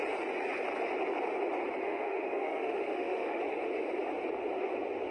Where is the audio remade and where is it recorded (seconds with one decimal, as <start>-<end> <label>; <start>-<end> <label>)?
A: 0.0-1.8 recorded; 1.8-3.4 remade; 3.4-5.1 recorded